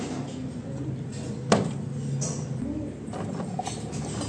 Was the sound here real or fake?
real